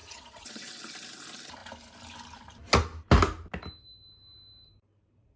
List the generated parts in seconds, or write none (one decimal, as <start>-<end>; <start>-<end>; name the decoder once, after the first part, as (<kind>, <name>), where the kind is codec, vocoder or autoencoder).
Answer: 0.0-0.9 (vocoder, Vocos)